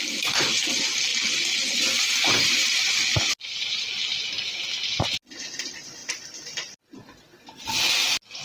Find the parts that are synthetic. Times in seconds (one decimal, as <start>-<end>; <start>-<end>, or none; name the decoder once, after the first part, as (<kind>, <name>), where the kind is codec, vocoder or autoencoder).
none